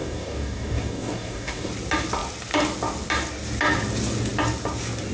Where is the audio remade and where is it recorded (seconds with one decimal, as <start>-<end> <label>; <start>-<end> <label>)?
0.0-1.7 remade; 1.7-5.1 recorded